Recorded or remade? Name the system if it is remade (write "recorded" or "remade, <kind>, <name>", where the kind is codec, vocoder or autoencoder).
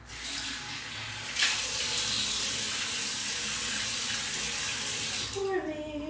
recorded